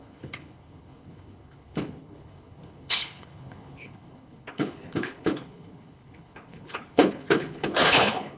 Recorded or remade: remade